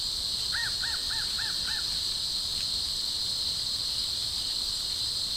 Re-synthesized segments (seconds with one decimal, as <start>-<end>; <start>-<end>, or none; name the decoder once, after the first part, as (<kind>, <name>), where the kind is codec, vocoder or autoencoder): 0.6-1.1 (vocoder, BigVGAN v2); 2.5-3.2; 4.2-5.4